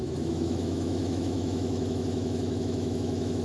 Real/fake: fake